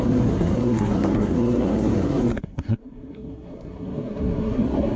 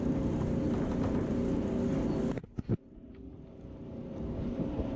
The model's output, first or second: first